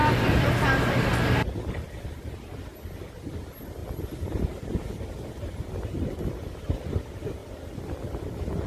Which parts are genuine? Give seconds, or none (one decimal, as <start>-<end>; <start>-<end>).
0.5-7.4